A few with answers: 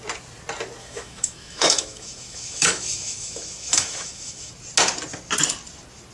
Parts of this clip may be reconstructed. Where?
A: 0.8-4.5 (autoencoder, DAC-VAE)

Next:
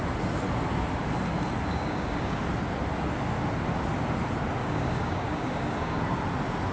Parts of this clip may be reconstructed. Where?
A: 1.7-2.4 (codec, DAC); 4.6-6.0

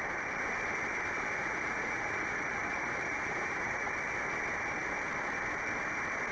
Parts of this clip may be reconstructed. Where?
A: 1.4-3.9 (vocoder, Vocos)

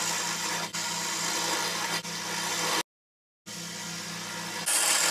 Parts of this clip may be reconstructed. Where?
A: none

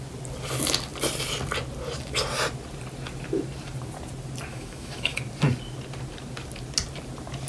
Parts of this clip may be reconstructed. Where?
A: 4.5-5.2 (autoencoder, DAC-VAE)

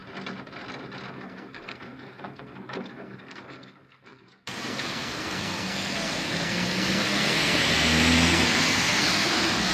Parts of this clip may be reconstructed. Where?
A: 1.1-9.7 (codec, SNAC)

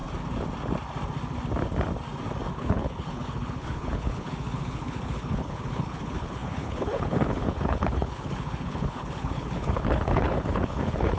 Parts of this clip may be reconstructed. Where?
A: 2.5-11.2 (codec, HILCodec)